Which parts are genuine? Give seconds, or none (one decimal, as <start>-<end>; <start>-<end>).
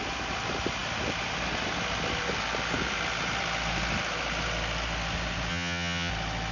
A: 0.0-5.5; 6.1-6.5